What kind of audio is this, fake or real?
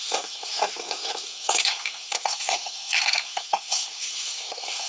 fake